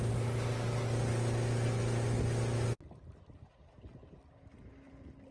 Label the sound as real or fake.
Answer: real